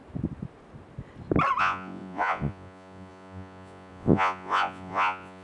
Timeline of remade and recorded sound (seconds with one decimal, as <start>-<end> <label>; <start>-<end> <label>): 0.0-1.6 recorded; 1.6-5.4 remade